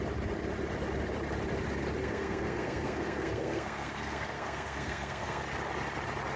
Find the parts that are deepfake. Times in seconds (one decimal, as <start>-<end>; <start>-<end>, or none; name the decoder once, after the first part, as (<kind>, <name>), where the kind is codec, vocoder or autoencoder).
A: 2.0-5.4 (codec, SNAC)